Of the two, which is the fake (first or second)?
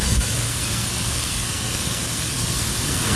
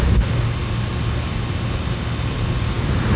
first